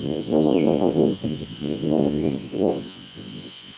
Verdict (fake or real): fake